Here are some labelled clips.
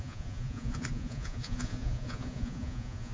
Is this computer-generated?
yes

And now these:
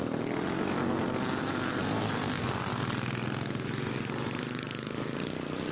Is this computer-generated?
no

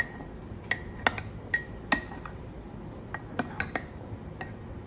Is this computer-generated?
no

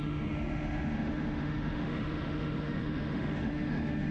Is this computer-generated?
yes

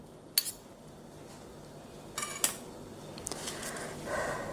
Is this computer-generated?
no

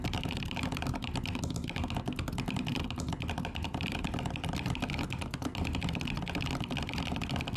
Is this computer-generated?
no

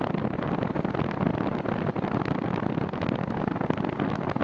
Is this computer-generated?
no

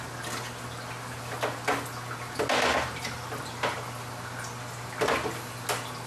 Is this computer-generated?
no